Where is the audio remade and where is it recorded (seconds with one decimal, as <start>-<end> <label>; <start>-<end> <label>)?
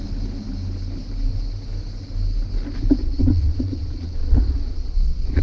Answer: 0.0-3.0 recorded; 3.0-5.4 remade